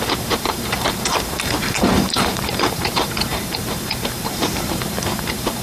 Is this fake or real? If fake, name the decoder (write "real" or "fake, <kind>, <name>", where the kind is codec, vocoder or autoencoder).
fake, vocoder, BigVGAN v2